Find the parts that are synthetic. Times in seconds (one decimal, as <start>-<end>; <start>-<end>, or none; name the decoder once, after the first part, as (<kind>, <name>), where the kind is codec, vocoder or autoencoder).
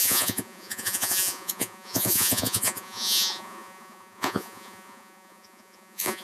0.0-6.2 (vocoder, Vocos)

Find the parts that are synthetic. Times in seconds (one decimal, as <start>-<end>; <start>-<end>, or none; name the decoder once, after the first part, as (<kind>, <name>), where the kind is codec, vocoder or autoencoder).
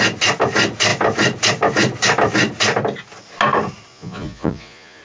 3.9-5.0 (vocoder, Vocos)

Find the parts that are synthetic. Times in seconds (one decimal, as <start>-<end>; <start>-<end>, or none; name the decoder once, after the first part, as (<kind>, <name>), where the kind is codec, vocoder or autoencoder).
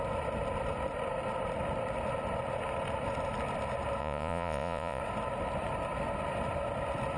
4.0-5.0 (vocoder, Vocos)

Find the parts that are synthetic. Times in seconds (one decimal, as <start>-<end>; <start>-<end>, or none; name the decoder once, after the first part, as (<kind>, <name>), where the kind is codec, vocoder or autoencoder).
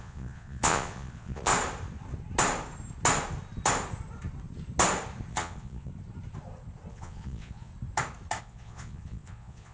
0.0-1.5 (vocoder, Vocos); 5.3-5.9; 6.9-7.7; 8.4-9.7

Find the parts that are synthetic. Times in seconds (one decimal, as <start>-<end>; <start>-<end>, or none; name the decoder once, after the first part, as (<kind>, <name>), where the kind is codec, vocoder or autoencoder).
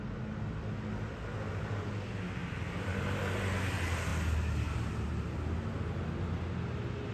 none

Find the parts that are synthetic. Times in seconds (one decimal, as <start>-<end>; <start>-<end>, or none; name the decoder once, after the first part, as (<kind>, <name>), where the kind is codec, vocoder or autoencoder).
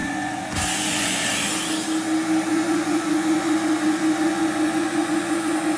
0.0-1.2 (vocoder, Vocos); 2.5-5.8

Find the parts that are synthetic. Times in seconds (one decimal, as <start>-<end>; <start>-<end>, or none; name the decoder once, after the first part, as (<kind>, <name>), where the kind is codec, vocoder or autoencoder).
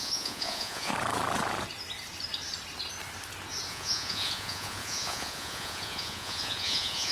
0.0-0.9 (vocoder, Vocos); 3.7-7.1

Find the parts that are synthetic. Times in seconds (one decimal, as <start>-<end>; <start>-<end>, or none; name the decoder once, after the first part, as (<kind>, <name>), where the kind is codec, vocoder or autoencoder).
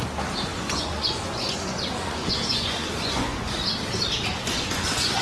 0.5-3.6 (vocoder, Vocos); 4.3-5.2